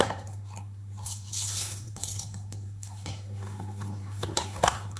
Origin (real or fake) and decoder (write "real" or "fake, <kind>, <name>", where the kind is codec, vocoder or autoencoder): fake, codec, SNAC